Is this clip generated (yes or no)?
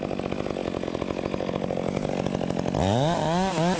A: no